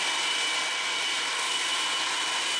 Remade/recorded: recorded